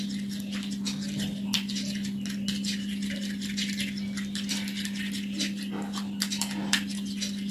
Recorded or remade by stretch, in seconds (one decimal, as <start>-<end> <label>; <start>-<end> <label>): 0.0-7.5 recorded